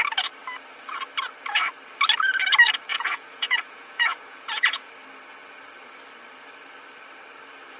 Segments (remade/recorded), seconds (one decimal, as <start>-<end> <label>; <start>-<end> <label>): 0.0-2.9 recorded; 2.9-4.9 remade; 4.9-7.8 recorded